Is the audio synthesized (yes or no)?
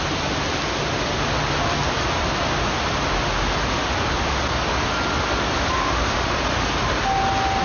no